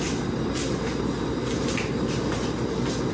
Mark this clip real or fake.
real